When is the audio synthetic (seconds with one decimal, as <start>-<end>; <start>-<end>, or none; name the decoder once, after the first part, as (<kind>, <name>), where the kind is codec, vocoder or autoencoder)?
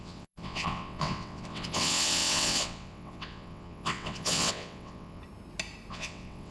0.0-5.2 (vocoder, WaveNeXt); 5.9-6.5